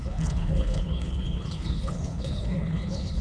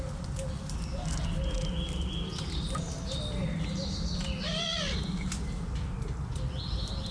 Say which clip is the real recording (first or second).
second